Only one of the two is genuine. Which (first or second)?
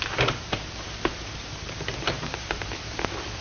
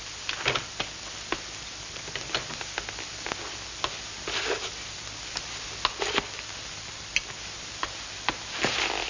second